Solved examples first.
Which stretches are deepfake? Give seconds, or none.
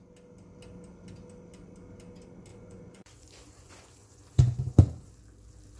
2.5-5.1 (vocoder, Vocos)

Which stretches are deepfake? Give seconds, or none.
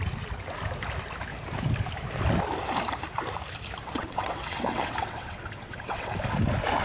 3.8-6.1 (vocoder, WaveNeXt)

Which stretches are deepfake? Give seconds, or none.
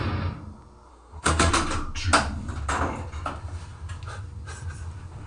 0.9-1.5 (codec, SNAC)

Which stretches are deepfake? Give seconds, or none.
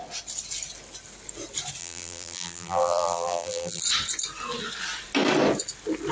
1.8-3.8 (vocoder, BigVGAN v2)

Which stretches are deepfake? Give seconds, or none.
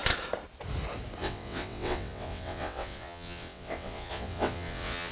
1.2-5.1 (vocoder, WaveNeXt)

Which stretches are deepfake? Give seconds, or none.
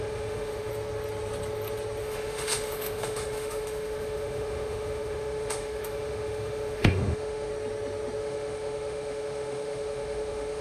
0.0-0.7 (autoencoder, DAC-VAE); 2.0-7.5; 8.2-10.6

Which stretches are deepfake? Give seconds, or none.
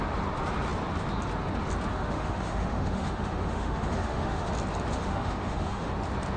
1.9-4.5 (autoencoder, DAC-VAE); 4.9-5.9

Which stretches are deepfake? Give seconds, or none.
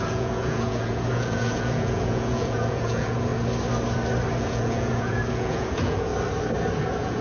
0.0-3.3 (vocoder, Vocos); 4.4-6.1; 6.8-7.2